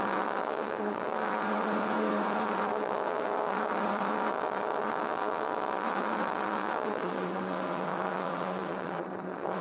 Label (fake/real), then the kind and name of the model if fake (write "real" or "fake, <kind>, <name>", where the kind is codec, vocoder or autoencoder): fake, vocoder, WaveNeXt